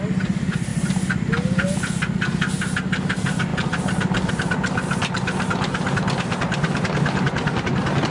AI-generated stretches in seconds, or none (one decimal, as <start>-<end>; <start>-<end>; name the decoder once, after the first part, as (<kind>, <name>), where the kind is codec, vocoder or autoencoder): none